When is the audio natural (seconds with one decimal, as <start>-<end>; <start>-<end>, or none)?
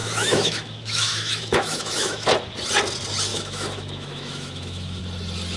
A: 2.3-3.3; 5.0-5.6